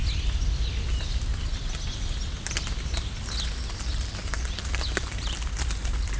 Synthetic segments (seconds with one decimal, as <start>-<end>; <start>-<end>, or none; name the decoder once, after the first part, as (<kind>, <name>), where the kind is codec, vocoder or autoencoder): 3.7-6.2 (vocoder, BigVGAN v2)